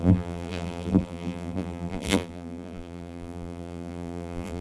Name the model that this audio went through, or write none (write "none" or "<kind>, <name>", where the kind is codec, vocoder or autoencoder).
vocoder, BigVGAN v2